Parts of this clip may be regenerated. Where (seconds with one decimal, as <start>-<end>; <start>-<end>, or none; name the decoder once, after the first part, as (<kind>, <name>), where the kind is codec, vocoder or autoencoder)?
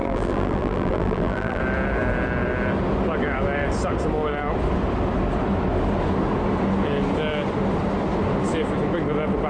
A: 0.0-1.6 (vocoder, BigVGAN v2)